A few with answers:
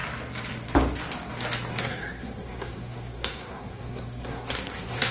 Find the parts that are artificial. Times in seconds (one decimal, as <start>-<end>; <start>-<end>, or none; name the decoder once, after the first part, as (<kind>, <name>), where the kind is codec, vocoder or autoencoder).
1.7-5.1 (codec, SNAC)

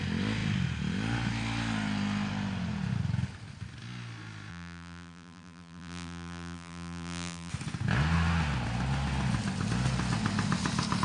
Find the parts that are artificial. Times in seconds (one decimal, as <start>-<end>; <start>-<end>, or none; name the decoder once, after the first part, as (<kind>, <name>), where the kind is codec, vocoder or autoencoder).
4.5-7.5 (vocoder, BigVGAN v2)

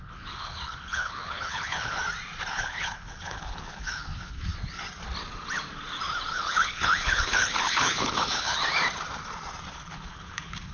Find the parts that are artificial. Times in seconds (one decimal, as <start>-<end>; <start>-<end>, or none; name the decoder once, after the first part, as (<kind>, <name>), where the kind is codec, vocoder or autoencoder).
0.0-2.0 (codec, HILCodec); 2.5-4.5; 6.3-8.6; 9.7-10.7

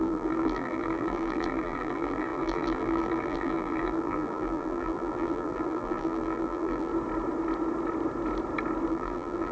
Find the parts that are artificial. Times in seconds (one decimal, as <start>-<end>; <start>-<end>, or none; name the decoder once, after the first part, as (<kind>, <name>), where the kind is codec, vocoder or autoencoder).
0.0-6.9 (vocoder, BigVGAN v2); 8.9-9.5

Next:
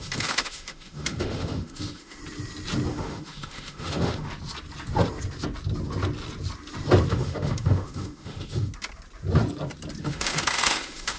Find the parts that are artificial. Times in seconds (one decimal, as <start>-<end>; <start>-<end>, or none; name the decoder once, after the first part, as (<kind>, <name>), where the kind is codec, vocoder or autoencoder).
0.0-2.2 (autoencoder, DAC-VAE); 2.9-4.3; 7.1-8.7; 10.0-11.2

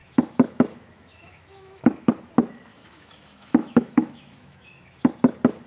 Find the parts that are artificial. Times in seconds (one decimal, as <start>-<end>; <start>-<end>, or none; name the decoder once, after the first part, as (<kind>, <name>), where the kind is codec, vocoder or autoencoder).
0.0-2.1 (autoencoder, DAC-VAE); 2.7-5.1

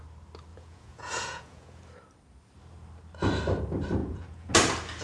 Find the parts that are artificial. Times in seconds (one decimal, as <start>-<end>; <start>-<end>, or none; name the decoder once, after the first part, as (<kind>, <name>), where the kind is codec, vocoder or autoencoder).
0.5-1.8 (vocoder, Vocos); 4.0-4.5